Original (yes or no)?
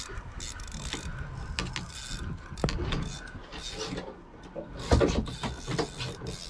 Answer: yes